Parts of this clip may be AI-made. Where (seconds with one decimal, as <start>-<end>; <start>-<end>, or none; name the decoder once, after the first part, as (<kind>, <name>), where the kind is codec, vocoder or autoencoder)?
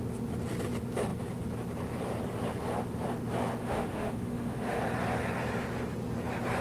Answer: 3.6-4.8 (autoencoder, DAC-VAE)